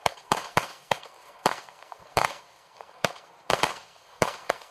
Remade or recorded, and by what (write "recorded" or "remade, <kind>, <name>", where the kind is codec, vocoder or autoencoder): remade, codec, SNAC